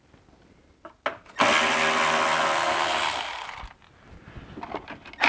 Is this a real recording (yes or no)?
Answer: yes